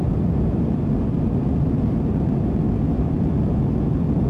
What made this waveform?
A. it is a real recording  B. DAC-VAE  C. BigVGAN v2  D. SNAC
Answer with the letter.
A